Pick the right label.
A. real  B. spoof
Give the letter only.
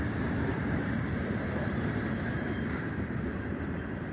B